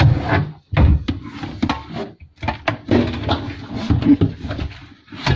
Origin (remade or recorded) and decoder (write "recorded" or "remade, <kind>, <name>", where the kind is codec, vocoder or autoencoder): recorded